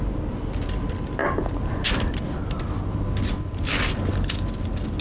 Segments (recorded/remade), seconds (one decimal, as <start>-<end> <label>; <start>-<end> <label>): 0.0-5.0 recorded